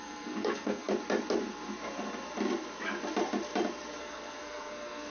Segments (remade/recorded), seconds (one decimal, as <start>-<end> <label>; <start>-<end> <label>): 0.0-0.9 remade; 0.9-4.0 recorded; 4.0-5.1 remade